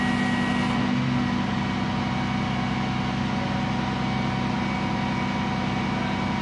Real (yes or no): yes